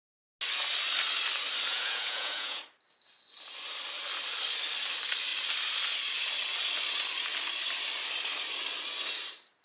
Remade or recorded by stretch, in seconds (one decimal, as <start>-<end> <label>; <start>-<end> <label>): 0.0-1.7 recorded; 1.7-2.6 remade; 2.6-9.6 recorded

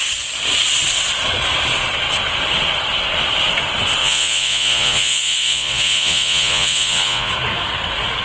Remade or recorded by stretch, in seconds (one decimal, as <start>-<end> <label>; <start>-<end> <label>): 0.0-4.0 recorded; 4.0-7.3 remade; 7.3-8.2 recorded

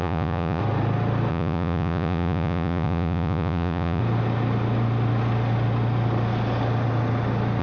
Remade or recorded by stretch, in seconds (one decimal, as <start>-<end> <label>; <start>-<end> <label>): 0.0-0.6 remade; 0.6-1.3 recorded; 1.3-4.0 remade; 4.0-7.6 recorded

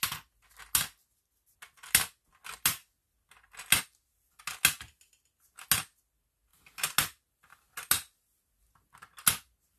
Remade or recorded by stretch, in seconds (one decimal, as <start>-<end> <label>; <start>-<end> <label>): 0.0-9.8 recorded

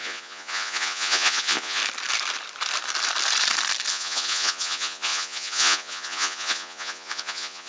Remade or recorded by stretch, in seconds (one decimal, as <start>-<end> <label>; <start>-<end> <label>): 0.0-1.8 remade; 1.8-3.9 recorded; 3.9-7.7 remade

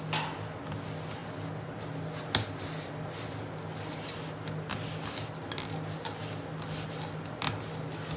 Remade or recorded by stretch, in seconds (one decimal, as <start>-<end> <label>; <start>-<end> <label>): 0.0-8.2 recorded